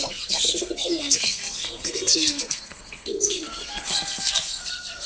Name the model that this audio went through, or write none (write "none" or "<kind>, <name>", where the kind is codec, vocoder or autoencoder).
codec, SNAC